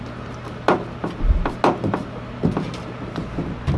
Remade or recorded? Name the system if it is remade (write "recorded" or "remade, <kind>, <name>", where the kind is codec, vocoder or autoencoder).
recorded